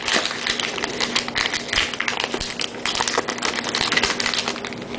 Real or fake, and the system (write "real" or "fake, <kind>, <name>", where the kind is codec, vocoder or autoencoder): real